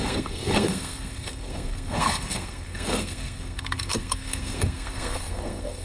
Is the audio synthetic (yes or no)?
yes